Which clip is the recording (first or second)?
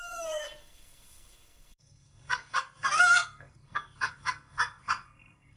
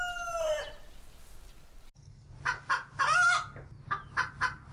second